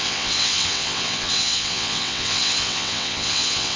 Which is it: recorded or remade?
remade